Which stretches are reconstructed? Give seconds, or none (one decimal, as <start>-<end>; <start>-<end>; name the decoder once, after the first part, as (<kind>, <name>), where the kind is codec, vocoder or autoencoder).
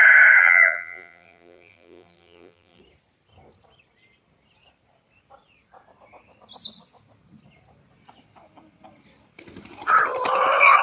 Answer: 0.4-2.8 (vocoder, BigVGAN v2)